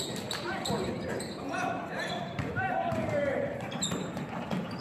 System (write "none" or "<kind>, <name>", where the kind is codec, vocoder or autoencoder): vocoder, BigVGAN v2